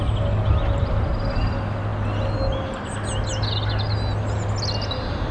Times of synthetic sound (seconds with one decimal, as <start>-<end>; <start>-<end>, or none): none